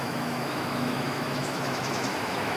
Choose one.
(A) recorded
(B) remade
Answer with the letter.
B